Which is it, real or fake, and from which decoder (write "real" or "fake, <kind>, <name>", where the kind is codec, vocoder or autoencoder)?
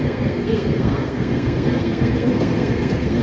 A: fake, codec, SNAC